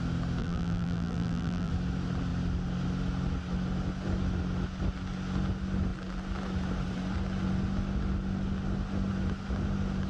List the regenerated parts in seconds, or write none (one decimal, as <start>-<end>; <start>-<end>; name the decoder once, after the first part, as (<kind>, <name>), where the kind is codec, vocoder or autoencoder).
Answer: 0.4-1.7 (vocoder, BigVGAN v2)